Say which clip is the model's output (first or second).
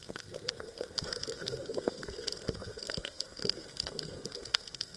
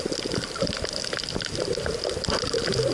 first